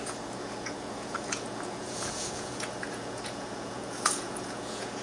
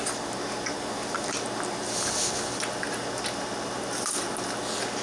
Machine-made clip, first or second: first